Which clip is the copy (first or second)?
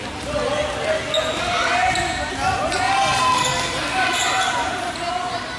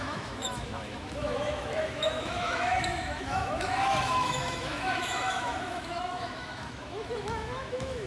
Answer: second